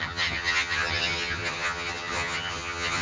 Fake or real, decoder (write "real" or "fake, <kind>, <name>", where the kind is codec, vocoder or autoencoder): fake, vocoder, HiFi-GAN